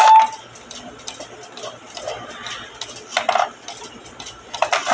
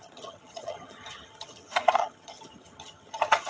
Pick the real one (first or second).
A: first